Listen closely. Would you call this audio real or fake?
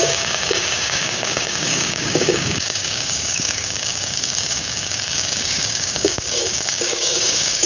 fake